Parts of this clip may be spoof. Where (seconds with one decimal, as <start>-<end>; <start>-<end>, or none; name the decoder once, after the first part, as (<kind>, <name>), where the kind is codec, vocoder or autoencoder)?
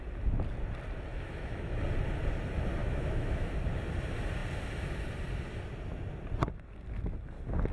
1.1-1.8 (autoencoder, DAC-VAE); 2.8-3.5